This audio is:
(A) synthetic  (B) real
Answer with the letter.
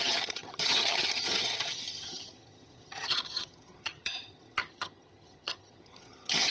A